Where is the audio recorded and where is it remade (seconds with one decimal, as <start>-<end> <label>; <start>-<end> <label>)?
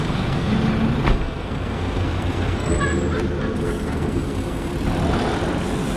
0.0-0.5 remade; 0.5-1.1 recorded; 1.1-2.7 remade; 2.7-3.4 recorded; 3.4-4.7 remade; 4.7-6.0 recorded